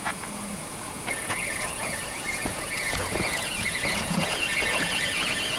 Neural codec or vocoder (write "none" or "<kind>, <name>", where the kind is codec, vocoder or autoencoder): vocoder, Vocos